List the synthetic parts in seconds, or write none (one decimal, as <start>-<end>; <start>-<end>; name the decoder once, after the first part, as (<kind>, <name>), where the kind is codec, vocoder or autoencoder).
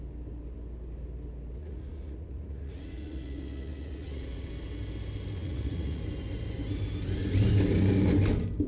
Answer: 1.6-4.5 (vocoder, Vocos); 5.4-6.0